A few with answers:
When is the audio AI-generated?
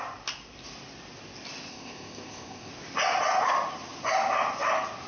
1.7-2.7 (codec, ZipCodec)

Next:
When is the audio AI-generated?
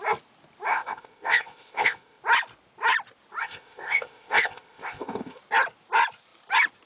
0.7-2.2 (codec, ZipCodec); 3.4-5.4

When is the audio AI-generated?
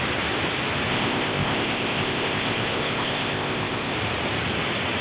0.9-3.9 (codec, ZipCodec)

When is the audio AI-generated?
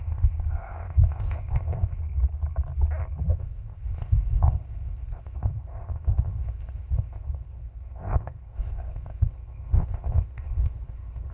0.0-2.0 (codec, ZipCodec); 3.3-11.3